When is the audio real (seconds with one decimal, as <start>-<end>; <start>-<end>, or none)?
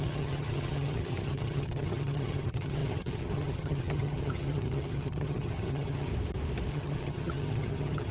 6.1-6.7